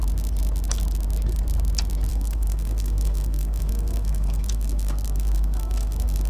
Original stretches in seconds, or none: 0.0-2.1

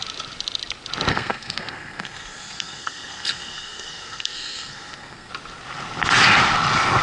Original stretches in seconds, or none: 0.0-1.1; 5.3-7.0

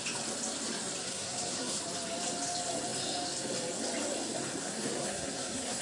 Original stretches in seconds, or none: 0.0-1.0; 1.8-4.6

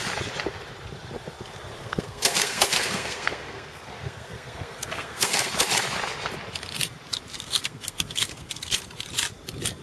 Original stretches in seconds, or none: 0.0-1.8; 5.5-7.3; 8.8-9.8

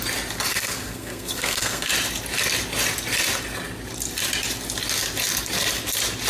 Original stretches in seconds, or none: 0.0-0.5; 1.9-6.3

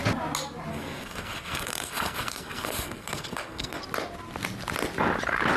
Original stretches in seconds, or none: 0.0-0.7; 3.8-5.6